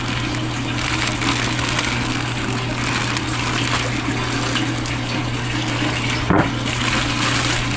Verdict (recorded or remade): recorded